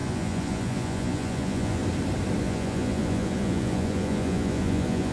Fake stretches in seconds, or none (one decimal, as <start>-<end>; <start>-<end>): 0.0-1.8; 2.4-5.1